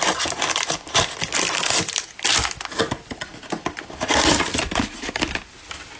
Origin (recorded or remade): recorded